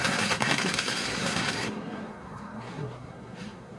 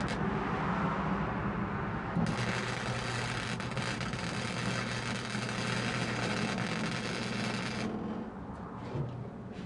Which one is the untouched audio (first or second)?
second